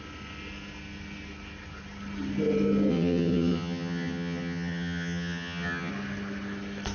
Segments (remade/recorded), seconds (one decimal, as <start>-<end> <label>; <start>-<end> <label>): 0.0-2.9 recorded; 2.9-5.9 remade; 5.9-6.9 recorded